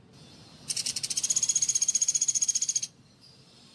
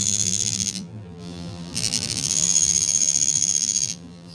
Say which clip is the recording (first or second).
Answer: first